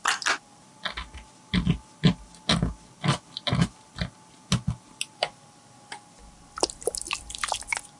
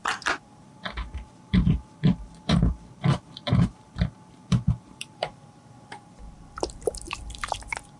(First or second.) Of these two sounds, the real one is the first